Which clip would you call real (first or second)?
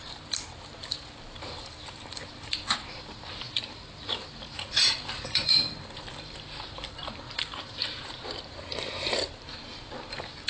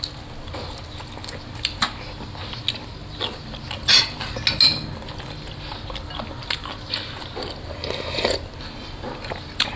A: second